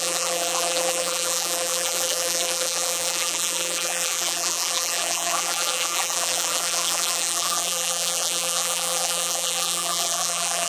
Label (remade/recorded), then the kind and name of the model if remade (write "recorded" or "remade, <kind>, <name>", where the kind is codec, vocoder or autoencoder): remade, vocoder, BigVGAN v2